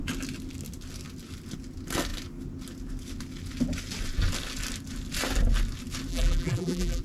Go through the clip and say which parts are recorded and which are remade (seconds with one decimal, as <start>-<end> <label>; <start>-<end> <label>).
0.0-6.1 recorded; 6.1-7.0 remade